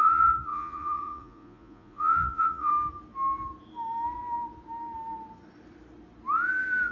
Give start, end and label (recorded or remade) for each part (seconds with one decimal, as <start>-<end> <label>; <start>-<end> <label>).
0.0-2.7 remade; 2.7-6.9 recorded